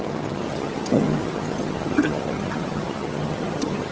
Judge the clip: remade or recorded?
remade